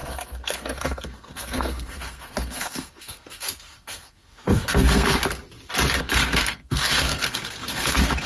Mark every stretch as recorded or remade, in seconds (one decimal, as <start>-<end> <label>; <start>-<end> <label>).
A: 0.0-5.2 remade; 5.2-6.0 recorded; 6.0-8.3 remade